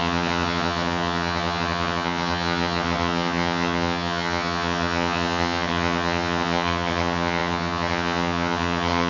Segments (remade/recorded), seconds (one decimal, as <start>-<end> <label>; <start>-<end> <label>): 0.0-9.1 remade